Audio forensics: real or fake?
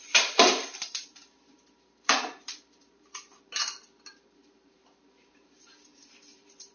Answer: fake